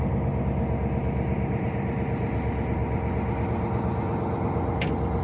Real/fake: real